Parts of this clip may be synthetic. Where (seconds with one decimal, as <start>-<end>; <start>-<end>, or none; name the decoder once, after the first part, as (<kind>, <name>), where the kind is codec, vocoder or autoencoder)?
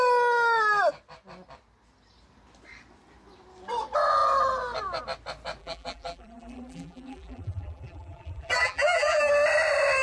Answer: 5.6-9.3 (vocoder, BigVGAN v2)